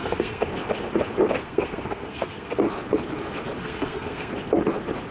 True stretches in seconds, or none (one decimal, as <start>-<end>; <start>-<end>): 0.5-1.4; 2.6-3.6; 4.3-5.1